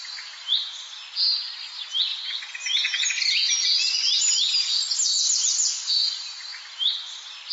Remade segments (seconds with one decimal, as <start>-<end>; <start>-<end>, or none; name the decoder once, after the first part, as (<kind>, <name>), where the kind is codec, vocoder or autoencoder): none

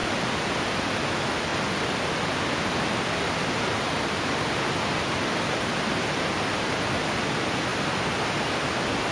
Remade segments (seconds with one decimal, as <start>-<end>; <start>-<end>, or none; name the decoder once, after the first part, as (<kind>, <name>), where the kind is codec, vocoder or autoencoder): none

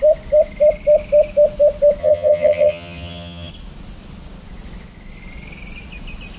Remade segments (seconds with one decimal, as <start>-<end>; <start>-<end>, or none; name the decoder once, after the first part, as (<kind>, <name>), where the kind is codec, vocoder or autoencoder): 2.0-3.5 (vocoder, HiFi-GAN)

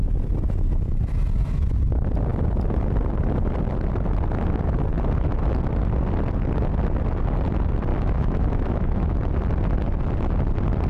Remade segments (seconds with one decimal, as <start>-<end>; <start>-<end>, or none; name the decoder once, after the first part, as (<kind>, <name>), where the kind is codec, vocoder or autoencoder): 7.9-9.2 (autoencoder, DAC-VAE)

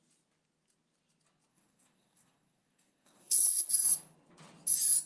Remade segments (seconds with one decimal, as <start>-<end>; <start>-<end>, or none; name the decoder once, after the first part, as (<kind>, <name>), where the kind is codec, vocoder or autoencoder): 1.5-3.7 (codec, SNAC)

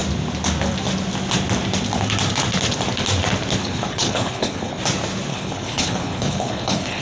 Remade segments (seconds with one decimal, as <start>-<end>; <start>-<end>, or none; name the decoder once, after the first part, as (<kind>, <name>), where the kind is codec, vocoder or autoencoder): 3.6-4.8 (codec, HILCodec); 5.3-7.0

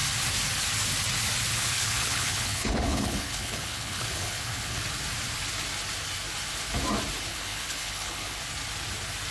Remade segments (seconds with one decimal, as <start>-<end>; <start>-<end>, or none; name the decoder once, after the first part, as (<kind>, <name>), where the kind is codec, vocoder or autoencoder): 1.5-4.8 (codec, HILCodec); 7.3-8.4

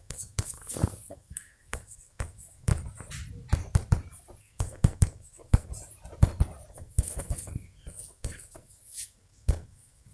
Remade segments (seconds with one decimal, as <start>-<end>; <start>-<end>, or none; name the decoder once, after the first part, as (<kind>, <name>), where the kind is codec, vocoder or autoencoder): 0.0-2.7 (codec, SNAC); 4.4-5.7; 6.7-10.1